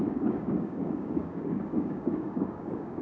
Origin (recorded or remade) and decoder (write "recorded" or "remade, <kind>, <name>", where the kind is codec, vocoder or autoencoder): remade, codec, DAC